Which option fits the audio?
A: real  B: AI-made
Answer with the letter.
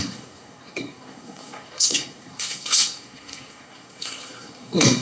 B